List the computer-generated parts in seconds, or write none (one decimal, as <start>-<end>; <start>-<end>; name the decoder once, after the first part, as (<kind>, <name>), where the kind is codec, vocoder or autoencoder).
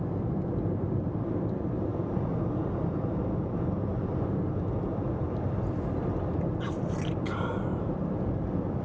0.0-1.9 (vocoder, BigVGAN v2); 3.1-3.9; 4.6-8.8